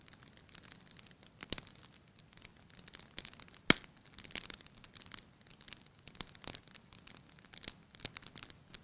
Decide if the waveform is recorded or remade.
recorded